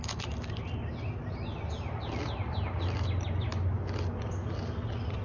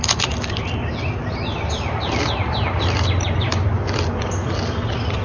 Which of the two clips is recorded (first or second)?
first